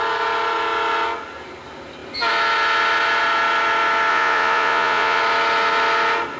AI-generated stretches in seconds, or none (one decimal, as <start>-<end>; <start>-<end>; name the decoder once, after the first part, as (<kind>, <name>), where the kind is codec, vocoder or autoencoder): 4.1-5.2 (vocoder, Vocos)